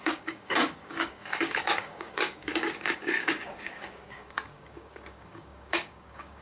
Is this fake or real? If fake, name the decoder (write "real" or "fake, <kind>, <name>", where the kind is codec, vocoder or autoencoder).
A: fake, codec, DAC